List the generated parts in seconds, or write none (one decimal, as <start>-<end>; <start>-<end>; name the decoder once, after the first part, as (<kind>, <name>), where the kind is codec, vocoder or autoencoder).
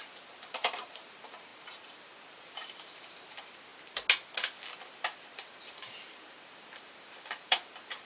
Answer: 0.0-3.7 (vocoder, BigVGAN v2); 5.3-8.0